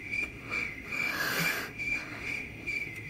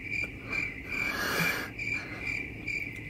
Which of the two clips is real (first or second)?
second